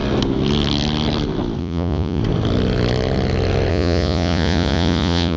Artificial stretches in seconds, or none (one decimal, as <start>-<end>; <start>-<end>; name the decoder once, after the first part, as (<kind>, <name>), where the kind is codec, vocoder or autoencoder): 1.6-2.2 (vocoder, Vocos); 3.7-5.4